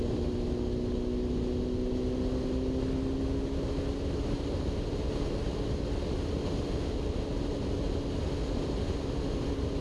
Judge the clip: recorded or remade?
recorded